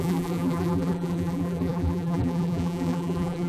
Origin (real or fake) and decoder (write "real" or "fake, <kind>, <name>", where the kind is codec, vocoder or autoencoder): fake, vocoder, BigVGAN v2